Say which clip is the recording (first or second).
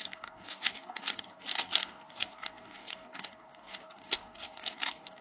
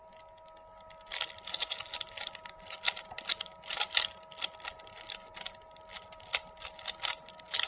second